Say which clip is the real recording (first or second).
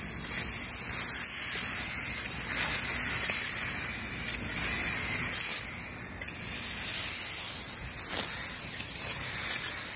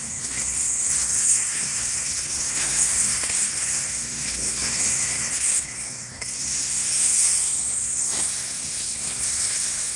first